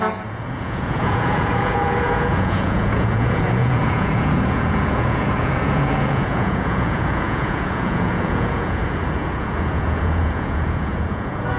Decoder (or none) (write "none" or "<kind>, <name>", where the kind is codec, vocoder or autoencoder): vocoder, Vocos